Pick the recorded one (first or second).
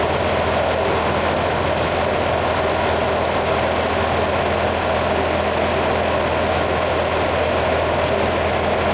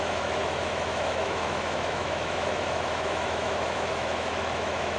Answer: first